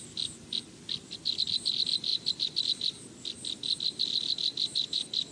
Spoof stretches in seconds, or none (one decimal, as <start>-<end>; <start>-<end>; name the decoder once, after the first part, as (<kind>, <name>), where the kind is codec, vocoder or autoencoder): none